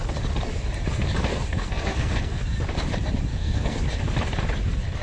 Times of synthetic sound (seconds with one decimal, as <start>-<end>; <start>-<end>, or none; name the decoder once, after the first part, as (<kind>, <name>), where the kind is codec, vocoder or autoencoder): 1.3-2.4 (codec, SNAC); 3.3-3.8